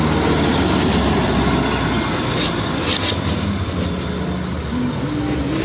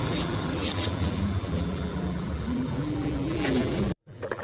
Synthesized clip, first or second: second